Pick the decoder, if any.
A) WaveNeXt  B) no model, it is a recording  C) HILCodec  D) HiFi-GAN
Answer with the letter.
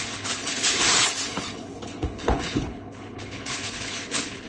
C